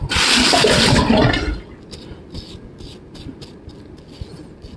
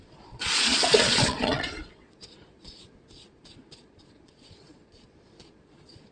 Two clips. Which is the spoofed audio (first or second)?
second